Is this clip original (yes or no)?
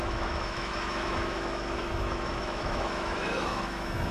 no